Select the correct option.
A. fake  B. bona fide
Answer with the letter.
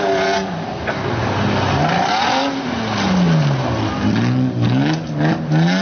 B